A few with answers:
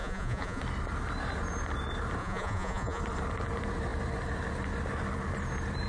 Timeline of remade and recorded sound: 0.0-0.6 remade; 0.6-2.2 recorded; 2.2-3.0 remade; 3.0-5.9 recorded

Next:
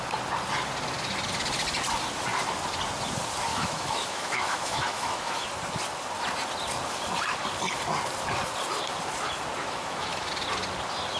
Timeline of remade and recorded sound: 0.0-3.5 recorded; 3.5-5.5 remade; 5.5-9.6 recorded; 9.6-10.3 remade; 10.3-11.2 recorded

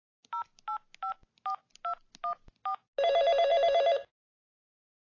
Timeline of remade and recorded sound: 0.0-5.1 recorded

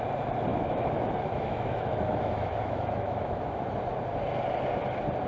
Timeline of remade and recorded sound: 0.0-0.5 recorded; 0.5-3.7 remade; 3.7-5.3 recorded

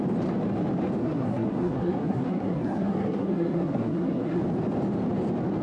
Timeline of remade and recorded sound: 0.0-1.0 recorded; 1.0-4.4 remade; 4.4-5.6 recorded

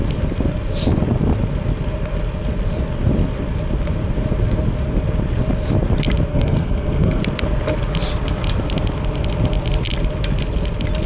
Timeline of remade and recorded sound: 0.0-6.3 recorded; 6.3-7.2 remade; 7.2-11.1 recorded

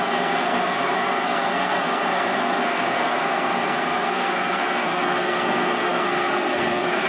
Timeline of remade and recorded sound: 0.0-7.1 remade

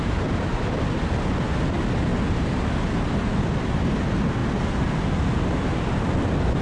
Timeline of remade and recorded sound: 0.0-2.1 recorded; 2.1-2.7 remade; 2.7-4.4 recorded; 4.4-5.0 remade; 5.0-6.6 recorded